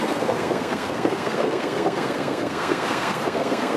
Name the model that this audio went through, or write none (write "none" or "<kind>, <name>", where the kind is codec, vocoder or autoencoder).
codec, SNAC